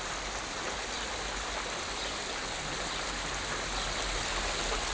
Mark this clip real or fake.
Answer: real